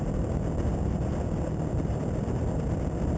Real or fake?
real